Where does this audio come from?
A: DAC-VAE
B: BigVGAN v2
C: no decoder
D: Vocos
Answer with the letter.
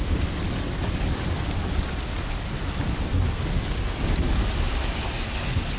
C